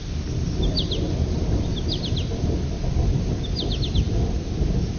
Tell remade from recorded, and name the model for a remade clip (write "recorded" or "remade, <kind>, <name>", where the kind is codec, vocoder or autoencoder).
recorded